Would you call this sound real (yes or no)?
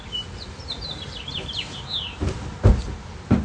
yes